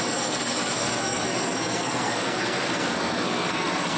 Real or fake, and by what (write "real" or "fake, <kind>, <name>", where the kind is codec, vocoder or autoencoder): fake, codec, SNAC